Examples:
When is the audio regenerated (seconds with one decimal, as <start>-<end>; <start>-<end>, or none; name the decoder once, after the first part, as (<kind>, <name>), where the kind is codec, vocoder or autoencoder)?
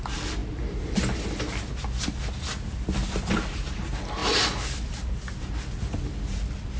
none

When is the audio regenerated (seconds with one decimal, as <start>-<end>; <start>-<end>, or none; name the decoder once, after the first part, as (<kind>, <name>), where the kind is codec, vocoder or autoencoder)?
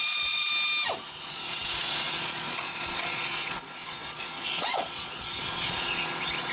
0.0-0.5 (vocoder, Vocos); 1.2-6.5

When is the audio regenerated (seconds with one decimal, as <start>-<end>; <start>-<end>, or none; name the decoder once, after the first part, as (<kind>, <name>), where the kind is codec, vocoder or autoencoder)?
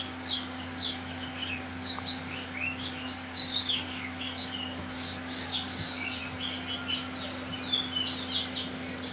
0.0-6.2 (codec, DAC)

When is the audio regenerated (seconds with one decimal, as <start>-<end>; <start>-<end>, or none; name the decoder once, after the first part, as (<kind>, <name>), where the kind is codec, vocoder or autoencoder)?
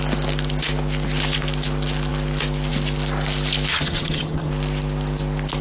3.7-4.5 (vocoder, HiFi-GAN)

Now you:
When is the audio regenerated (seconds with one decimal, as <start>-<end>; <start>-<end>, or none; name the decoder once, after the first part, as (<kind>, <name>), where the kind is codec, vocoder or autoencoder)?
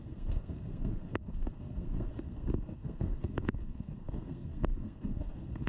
0.0-5.7 (codec, SNAC)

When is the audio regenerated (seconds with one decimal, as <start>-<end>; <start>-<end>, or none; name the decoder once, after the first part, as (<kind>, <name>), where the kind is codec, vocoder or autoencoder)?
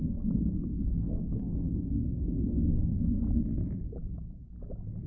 0.0-3.0 (codec, SNAC)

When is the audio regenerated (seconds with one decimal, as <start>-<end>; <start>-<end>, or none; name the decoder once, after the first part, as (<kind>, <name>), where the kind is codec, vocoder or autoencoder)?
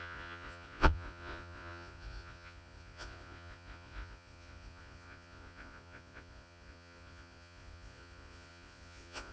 0.0-9.3 (vocoder, Vocos)